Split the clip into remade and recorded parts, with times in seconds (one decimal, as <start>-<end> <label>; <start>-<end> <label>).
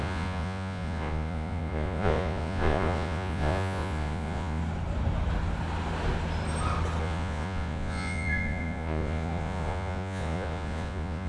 0.0-4.6 remade; 4.6-7.0 recorded; 7.0-11.3 remade